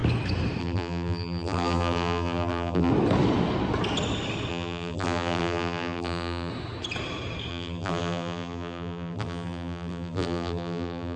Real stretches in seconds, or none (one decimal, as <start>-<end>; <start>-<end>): 0.0-0.6; 2.9-4.5; 6.5-7.5